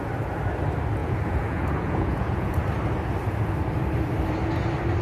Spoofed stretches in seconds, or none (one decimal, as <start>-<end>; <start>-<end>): 1.0-2.6